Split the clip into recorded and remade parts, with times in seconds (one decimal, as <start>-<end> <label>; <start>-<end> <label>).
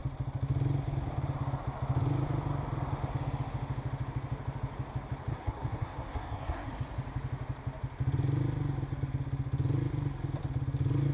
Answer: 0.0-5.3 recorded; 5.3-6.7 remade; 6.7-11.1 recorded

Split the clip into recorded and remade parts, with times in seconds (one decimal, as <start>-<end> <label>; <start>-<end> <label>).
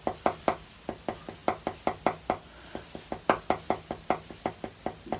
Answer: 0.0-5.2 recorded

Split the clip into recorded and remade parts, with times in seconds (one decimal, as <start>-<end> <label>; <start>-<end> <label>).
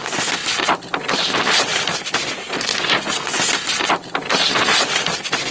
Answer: 0.0-5.5 recorded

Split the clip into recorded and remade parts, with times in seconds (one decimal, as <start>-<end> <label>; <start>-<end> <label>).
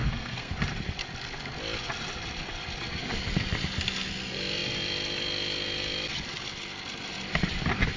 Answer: 0.0-0.5 remade; 0.5-8.0 recorded